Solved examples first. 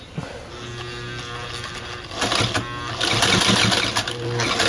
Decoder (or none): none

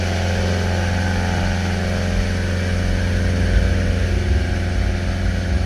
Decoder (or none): none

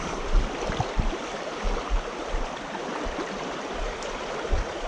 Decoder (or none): vocoder, BigVGAN v2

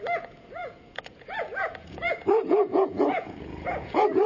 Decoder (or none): vocoder, Vocos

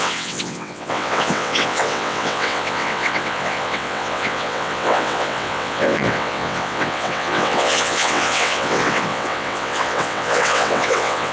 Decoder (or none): vocoder, WaveNeXt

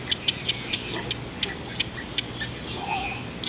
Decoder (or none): none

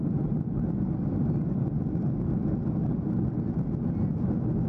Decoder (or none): none